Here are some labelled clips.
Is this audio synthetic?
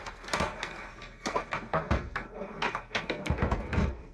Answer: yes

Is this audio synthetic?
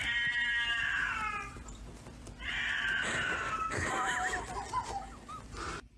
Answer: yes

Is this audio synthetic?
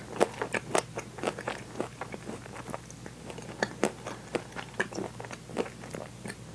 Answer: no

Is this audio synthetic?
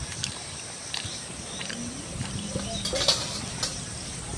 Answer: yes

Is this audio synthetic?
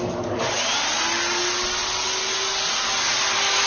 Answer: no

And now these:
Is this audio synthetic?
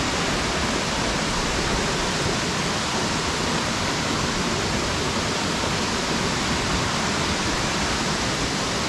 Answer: no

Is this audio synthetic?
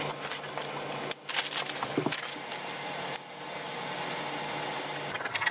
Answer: no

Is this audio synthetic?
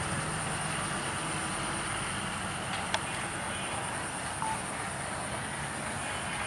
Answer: no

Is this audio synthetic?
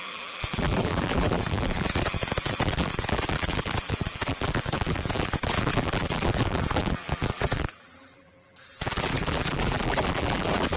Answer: yes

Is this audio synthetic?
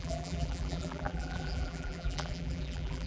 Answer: yes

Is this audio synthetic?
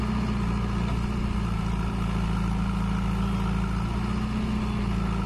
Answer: no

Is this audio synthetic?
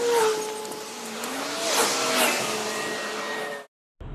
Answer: no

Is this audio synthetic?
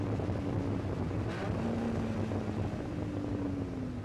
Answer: no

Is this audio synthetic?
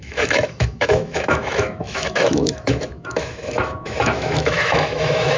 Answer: yes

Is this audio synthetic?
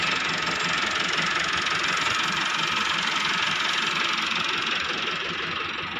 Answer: no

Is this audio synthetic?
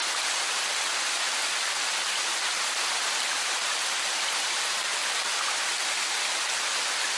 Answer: no